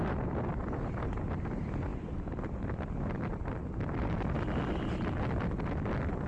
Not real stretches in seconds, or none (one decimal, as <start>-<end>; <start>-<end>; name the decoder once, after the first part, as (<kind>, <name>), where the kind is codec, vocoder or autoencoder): none